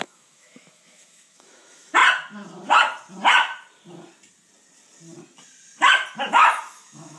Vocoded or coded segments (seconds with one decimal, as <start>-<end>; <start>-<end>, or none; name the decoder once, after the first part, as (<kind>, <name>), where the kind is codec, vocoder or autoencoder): 0.0-2.0 (autoencoder, DAC-VAE); 6.3-7.2